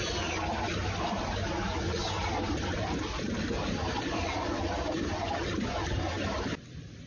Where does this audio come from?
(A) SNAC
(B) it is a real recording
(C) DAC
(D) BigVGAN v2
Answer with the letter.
B